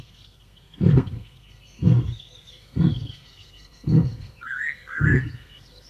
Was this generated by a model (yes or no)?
yes